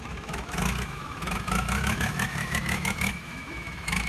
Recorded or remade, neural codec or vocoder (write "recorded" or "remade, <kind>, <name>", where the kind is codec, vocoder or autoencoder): remade, autoencoder, DAC-VAE